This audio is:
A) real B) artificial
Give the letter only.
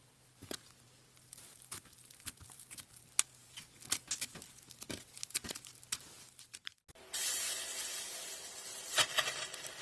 A